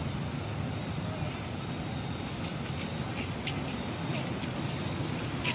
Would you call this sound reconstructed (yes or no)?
no